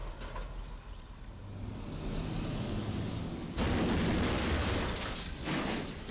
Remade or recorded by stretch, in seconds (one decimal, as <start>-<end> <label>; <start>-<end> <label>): 0.0-0.9 recorded; 0.9-1.4 remade; 1.4-2.9 recorded; 2.9-6.1 remade